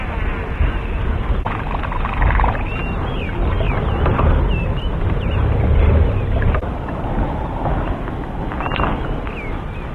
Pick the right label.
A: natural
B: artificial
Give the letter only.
A